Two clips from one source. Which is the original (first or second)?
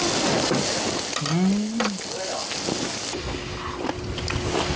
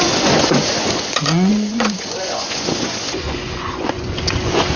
first